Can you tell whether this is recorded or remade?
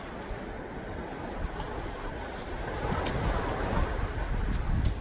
recorded